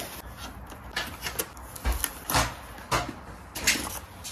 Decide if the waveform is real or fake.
real